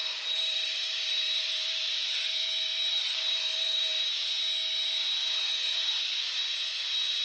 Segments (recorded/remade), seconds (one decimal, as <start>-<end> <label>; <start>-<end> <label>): 0.0-4.0 remade; 4.0-5.2 recorded; 5.2-6.4 remade; 6.4-7.2 recorded